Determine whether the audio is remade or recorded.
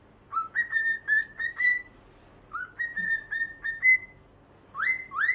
recorded